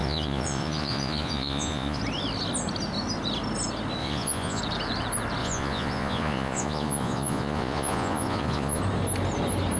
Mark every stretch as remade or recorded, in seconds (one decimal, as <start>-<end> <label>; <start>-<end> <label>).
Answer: 0.0-2.0 remade; 2.0-4.0 recorded; 4.0-4.6 remade; 4.6-5.4 recorded; 5.4-8.8 remade; 8.8-9.8 recorded